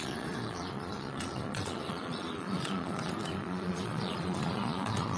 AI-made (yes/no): yes